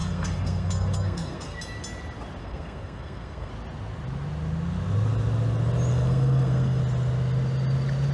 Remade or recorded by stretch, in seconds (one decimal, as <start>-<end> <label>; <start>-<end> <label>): 0.0-1.6 remade; 1.6-2.4 recorded; 2.4-3.5 remade; 3.5-5.9 recorded; 5.9-6.8 remade; 6.8-8.1 recorded